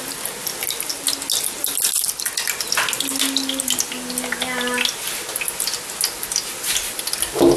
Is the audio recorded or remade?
recorded